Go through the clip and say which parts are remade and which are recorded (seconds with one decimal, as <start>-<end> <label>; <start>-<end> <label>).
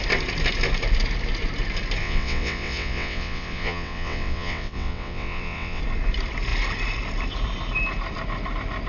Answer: 0.0-2.0 recorded; 2.0-5.8 remade; 5.8-8.9 recorded